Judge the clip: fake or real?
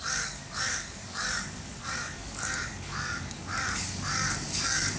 fake